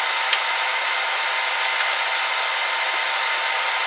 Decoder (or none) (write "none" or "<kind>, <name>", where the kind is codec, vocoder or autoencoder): none